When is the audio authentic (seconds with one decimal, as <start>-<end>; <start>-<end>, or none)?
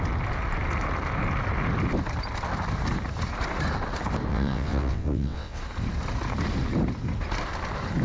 0.0-4.3; 5.6-8.0